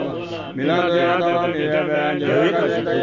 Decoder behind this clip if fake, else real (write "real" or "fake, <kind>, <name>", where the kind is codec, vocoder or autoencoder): fake, vocoder, BigVGAN v2